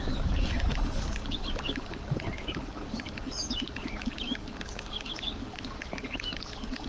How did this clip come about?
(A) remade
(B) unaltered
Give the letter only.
A